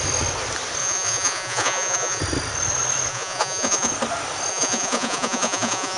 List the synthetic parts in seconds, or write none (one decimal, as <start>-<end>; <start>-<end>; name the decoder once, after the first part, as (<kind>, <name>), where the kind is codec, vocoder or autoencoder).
0.8-2.2 (vocoder, Vocos); 3.1-3.9; 4.5-6.0